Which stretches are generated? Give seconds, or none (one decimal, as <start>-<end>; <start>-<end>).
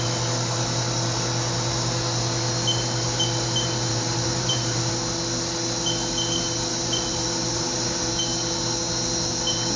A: 3.9-4.9; 6.7-8.1